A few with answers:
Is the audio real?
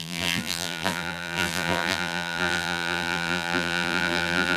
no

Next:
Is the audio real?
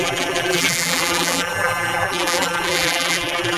no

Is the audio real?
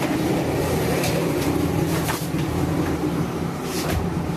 no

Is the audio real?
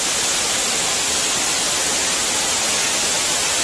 yes